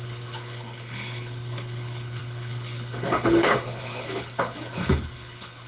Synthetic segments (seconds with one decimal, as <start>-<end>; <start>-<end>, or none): 0.0-5.7